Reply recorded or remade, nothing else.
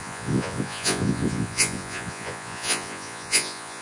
remade